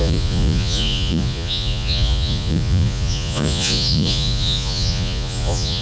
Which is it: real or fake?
fake